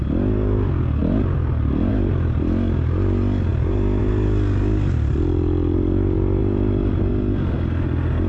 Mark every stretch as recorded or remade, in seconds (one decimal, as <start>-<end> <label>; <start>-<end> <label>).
0.0-8.3 recorded